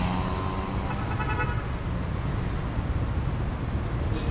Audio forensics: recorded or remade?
recorded